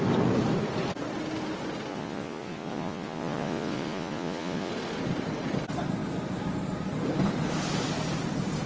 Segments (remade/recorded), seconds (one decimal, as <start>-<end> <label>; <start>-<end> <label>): 0.0-1.9 recorded; 1.9-4.7 remade; 4.7-8.7 recorded